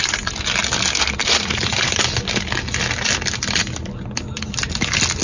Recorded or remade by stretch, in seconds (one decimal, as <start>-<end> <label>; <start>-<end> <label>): 0.0-1.2 recorded; 1.2-2.0 remade; 2.0-5.2 recorded